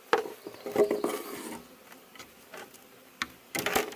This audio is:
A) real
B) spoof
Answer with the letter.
A